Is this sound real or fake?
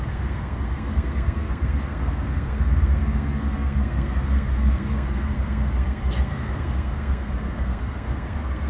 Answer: fake